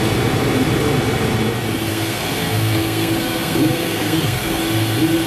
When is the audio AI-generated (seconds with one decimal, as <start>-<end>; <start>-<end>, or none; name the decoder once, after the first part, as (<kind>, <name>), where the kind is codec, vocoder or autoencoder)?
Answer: 1.9-4.6 (codec, SNAC)